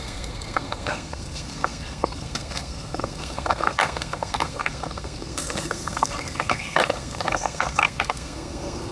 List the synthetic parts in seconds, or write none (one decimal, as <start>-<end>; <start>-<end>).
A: 0.0-8.9